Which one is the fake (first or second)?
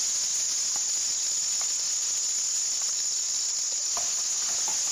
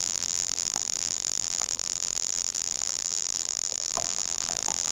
second